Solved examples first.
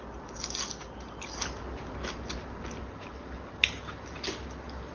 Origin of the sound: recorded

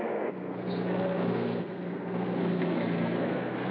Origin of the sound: remade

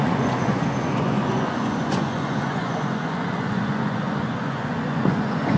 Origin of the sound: remade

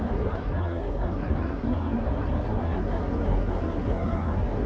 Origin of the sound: remade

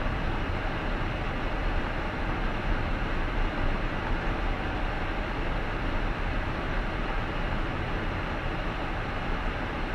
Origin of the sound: recorded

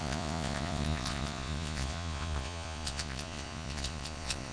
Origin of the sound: remade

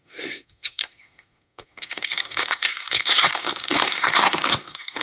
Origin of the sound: remade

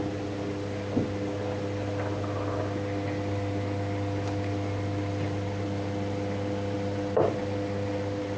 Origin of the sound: recorded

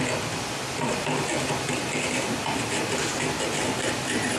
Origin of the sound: remade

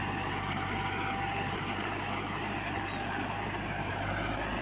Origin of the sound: recorded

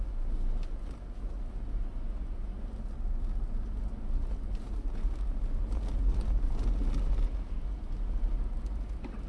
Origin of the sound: recorded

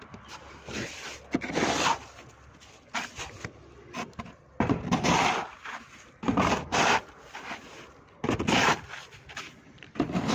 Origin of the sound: recorded